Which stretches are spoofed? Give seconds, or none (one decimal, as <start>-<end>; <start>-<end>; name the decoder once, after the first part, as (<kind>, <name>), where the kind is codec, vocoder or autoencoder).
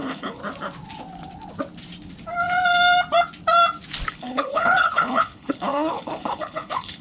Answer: 0.0-0.4 (codec, HILCodec); 4.1-7.0